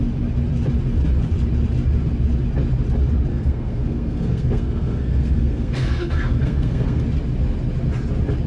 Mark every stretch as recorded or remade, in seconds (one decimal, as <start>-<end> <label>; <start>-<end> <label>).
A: 0.0-3.3 recorded; 3.3-7.0 remade; 7.0-8.5 recorded